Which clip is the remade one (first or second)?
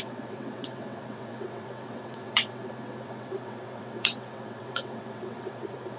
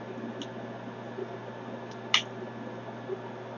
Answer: first